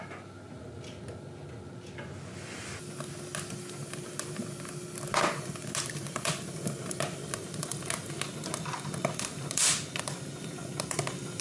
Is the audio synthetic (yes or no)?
no